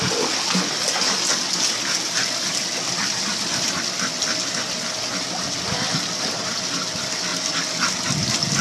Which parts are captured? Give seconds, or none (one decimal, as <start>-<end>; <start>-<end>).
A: 0.0-8.6